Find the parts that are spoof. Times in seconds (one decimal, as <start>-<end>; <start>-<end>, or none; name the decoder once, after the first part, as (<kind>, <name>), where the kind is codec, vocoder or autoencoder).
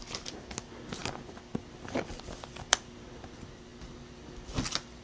none